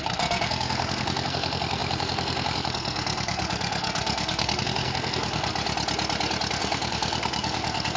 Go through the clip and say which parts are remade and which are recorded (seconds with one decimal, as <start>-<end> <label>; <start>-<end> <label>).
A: 0.0-5.5 remade; 5.5-6.5 recorded; 6.5-8.0 remade